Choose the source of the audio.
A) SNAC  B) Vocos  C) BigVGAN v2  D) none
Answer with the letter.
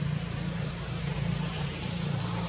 C